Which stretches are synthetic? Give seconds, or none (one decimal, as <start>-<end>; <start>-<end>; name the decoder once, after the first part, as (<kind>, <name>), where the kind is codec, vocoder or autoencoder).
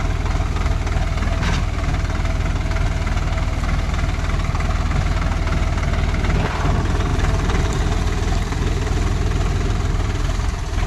7.1-7.8 (vocoder, BigVGAN v2)